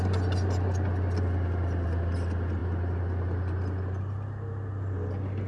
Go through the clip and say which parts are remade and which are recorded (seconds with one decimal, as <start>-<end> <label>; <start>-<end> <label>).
0.0-5.5 recorded